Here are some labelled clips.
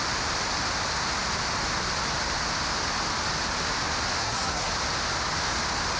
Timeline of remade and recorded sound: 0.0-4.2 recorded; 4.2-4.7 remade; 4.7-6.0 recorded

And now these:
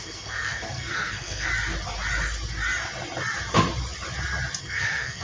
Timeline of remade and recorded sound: 0.0-1.5 remade; 1.5-4.6 recorded; 4.6-5.2 remade

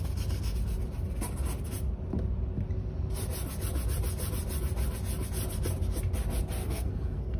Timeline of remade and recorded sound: 0.0-6.6 recorded; 6.6-7.4 remade